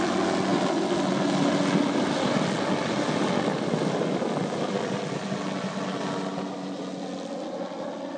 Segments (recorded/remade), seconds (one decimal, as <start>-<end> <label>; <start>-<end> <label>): 0.0-8.2 recorded